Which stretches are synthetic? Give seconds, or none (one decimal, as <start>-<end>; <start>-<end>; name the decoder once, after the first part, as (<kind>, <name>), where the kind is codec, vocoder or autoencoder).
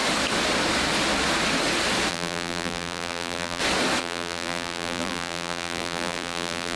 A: 2.1-3.6 (vocoder, BigVGAN v2); 4.0-6.8